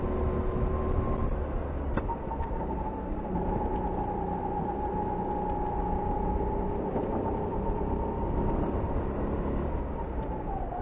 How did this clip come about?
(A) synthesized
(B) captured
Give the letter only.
B